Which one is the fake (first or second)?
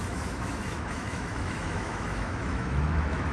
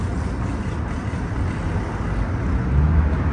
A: first